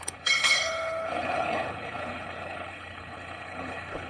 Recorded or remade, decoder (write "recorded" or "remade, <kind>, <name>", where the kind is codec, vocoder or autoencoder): remade, codec, HILCodec